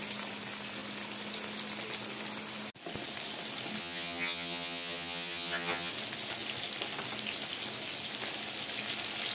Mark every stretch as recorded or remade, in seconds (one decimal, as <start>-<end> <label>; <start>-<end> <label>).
0.0-3.8 recorded; 3.8-5.9 remade; 5.9-9.3 recorded